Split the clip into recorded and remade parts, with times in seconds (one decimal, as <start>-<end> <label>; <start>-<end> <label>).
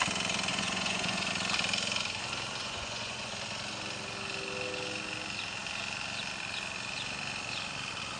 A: 0.0-0.5 recorded; 0.5-1.3 remade; 1.3-2.6 recorded; 2.6-3.3 remade; 3.3-8.2 recorded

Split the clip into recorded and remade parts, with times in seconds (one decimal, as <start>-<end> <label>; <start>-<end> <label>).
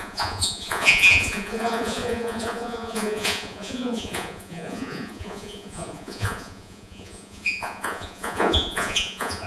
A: 0.0-9.5 remade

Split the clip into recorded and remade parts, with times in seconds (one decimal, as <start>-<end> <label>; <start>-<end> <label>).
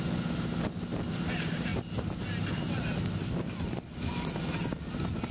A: 0.0-5.3 recorded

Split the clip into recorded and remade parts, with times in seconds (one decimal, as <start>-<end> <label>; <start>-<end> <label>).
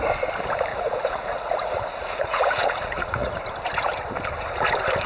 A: 0.0-0.7 recorded; 0.7-3.4 remade; 3.4-5.1 recorded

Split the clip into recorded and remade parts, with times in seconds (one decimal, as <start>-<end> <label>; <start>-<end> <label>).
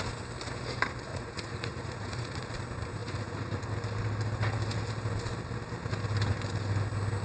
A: 0.0-1.1 recorded; 1.1-2.5 remade; 2.5-3.0 recorded; 3.0-3.6 remade; 3.6-7.2 recorded